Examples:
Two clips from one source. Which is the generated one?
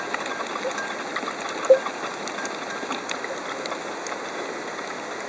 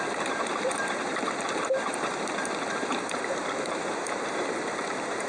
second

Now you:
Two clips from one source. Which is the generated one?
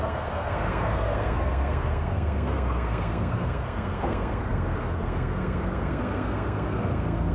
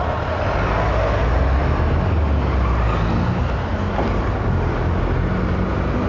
first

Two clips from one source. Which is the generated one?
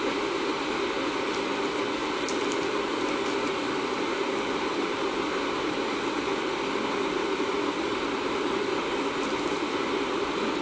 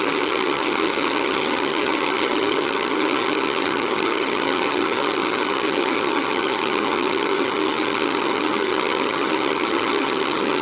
second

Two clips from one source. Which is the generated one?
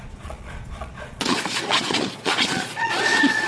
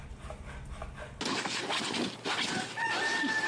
first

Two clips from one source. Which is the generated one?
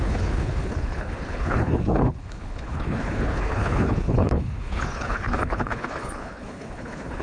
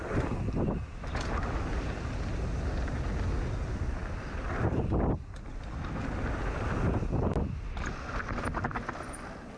first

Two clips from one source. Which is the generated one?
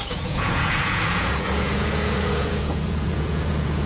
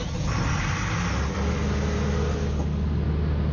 first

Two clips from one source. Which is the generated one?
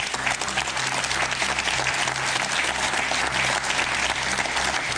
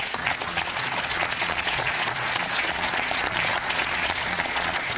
second